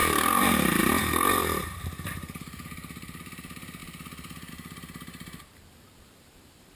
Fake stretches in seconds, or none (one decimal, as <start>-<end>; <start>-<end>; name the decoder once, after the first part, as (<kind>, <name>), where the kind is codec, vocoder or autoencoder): 0.0-3.8 (vocoder, BigVGAN v2); 4.5-6.8